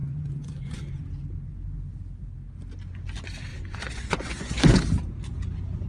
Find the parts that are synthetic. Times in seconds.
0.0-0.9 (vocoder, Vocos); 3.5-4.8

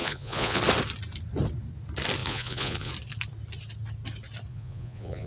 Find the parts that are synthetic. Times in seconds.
0.0-0.6 (vocoder, Vocos); 2.2-2.9; 4.5-5.3